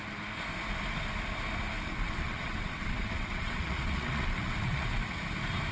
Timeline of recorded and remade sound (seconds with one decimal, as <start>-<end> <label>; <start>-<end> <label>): 0.0-1.9 recorded; 1.9-5.2 remade; 5.2-5.7 recorded